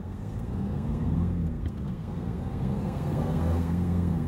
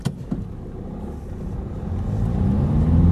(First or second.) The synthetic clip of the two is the first